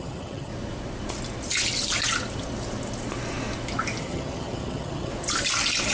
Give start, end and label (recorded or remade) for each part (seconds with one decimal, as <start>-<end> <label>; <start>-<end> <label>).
0.0-0.5 remade; 0.5-4.0 recorded; 4.0-5.1 remade; 5.1-5.9 recorded

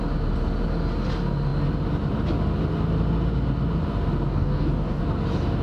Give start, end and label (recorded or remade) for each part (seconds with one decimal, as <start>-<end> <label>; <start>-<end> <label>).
0.0-4.3 recorded; 4.3-5.0 remade; 5.0-5.6 recorded

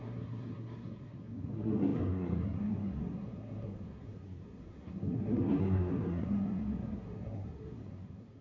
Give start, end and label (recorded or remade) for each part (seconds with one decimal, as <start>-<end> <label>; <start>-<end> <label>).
0.0-8.4 remade

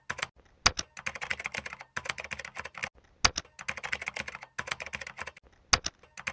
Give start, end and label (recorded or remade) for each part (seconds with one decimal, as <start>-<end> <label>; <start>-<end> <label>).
0.0-6.3 recorded

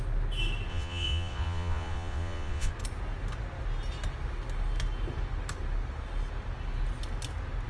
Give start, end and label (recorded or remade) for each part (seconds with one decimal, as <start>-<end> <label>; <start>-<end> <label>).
0.0-0.7 recorded; 0.7-2.7 remade; 2.7-7.7 recorded

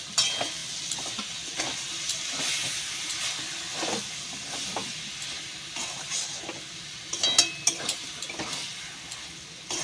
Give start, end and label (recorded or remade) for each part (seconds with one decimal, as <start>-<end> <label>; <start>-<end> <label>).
0.0-9.8 recorded

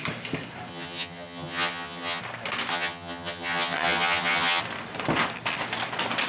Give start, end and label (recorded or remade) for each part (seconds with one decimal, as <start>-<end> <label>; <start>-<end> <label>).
0.0-0.7 recorded; 0.7-2.2 remade; 2.2-2.7 recorded; 2.7-4.6 remade; 4.6-6.3 recorded